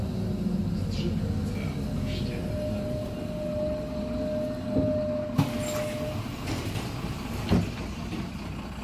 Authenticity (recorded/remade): recorded